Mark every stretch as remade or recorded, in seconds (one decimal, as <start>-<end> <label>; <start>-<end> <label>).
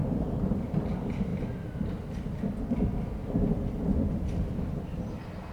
0.0-5.5 recorded